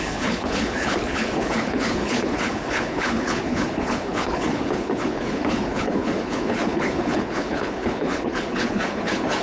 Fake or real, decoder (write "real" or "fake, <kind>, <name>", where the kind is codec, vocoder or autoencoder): fake, codec, HILCodec